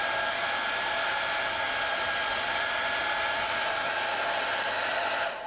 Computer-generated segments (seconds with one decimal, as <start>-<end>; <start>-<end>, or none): none